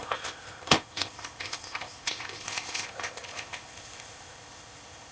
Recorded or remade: remade